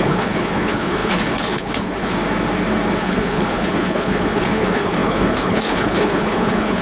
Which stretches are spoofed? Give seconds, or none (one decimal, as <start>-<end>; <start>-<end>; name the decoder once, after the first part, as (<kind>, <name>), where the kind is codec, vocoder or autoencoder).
0.0-2.1 (codec, HILCodec); 3.0-6.8